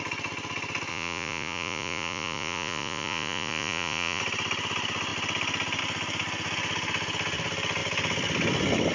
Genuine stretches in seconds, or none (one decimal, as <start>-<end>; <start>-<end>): 0.0-0.9; 4.2-8.9

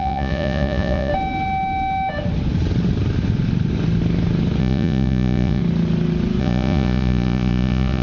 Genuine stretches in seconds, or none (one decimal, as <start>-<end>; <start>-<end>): 1.1-4.6; 5.6-6.4